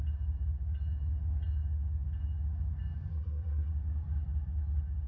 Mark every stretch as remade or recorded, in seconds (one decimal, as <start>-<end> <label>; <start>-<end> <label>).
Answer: 0.0-3.1 recorded; 3.1-3.7 remade; 3.7-5.1 recorded